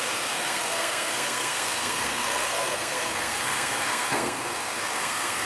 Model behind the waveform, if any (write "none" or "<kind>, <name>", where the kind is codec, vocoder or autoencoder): codec, SNAC